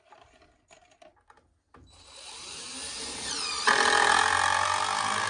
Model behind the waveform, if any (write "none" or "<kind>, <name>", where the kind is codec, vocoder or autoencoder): none